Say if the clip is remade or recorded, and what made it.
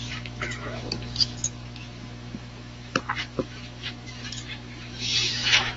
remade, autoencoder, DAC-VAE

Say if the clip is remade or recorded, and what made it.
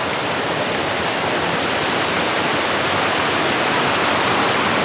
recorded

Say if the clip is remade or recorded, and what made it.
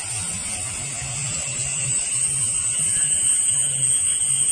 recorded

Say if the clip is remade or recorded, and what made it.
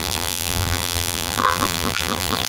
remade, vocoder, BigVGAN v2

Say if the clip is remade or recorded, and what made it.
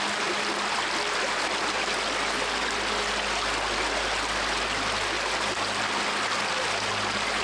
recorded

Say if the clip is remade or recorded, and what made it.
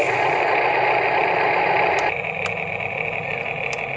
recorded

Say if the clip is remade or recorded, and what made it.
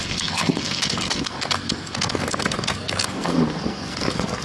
remade, codec, SNAC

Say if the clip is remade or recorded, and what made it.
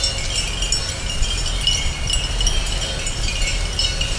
recorded